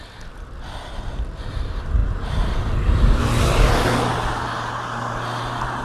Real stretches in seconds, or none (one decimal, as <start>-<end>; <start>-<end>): 0.0-2.0; 3.2-5.8

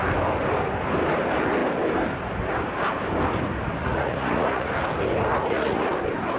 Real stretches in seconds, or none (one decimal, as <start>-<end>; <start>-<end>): 0.0-3.8; 4.7-5.3; 5.9-6.4

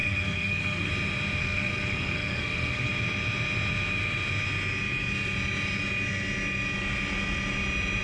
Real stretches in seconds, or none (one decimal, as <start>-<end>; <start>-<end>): 0.9-1.4; 2.9-8.0

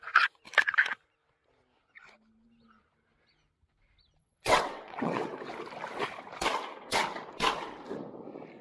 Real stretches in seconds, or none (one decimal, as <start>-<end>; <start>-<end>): 0.0-4.2; 5.5-8.6

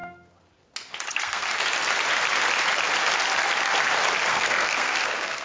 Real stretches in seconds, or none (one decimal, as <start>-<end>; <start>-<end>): 0.0-1.1; 1.6-4.2

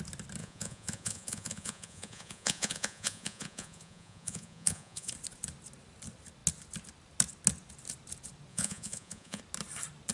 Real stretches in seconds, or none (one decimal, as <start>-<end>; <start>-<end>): 0.0-0.4; 5.1-8.5; 9.4-10.1